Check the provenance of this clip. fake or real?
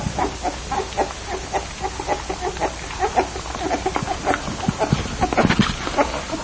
real